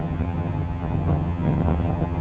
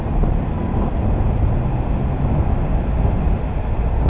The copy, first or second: first